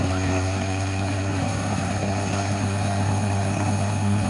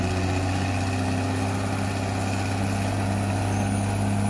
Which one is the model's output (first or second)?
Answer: first